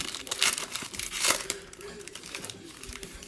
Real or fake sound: fake